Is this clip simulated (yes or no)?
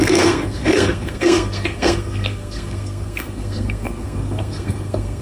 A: yes